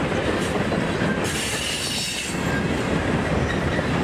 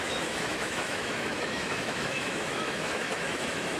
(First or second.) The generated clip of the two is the second